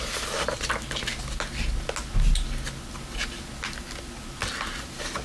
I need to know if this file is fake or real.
real